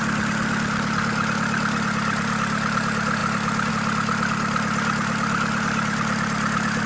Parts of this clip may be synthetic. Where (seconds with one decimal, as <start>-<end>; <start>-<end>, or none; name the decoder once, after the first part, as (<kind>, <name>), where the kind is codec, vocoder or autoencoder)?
none